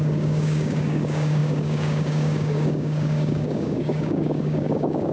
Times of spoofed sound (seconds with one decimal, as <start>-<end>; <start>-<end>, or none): 0.0-5.1